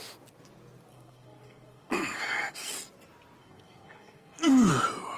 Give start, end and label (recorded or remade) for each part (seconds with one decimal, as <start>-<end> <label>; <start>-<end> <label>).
0.0-0.9 recorded; 0.9-2.7 remade; 2.7-3.4 recorded; 3.4-4.7 remade; 4.7-5.2 recorded